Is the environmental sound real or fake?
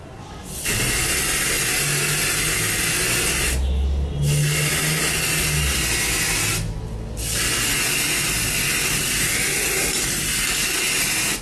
real